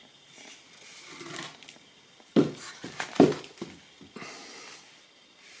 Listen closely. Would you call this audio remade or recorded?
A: recorded